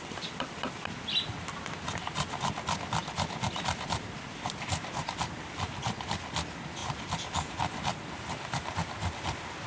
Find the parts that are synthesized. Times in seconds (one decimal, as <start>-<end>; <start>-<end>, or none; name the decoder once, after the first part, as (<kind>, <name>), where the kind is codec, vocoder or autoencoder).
none

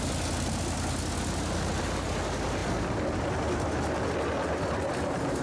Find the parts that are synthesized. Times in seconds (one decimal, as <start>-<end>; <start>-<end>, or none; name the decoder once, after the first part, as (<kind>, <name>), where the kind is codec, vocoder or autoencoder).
none

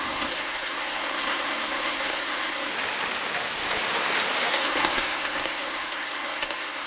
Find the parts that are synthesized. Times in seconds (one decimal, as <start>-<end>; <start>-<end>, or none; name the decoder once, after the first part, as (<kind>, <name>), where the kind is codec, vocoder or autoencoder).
0.0-2.7 (codec, SNAC); 4.5-6.9

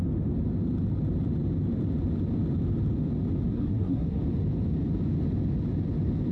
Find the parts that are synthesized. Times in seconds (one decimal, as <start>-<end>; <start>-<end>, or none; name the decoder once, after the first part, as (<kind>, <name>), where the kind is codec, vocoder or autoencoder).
3.5-4.2 (codec, SNAC)

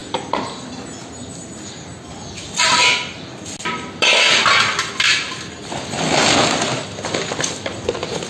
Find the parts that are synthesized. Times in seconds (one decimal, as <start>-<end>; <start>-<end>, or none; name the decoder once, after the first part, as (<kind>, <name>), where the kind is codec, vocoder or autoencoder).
none

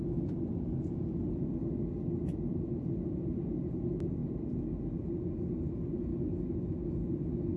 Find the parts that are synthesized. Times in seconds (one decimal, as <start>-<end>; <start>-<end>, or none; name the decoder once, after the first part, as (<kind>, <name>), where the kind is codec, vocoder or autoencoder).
none